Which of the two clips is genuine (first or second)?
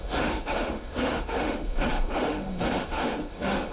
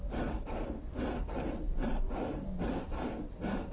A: second